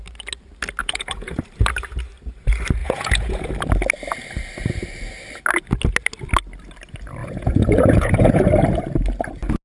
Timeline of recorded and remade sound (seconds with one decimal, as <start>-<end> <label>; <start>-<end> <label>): 0.0-0.8 recorded; 0.8-1.4 remade; 1.4-2.8 recorded; 2.8-3.5 remade; 3.5-7.2 recorded; 7.2-8.4 remade; 8.4-9.6 recorded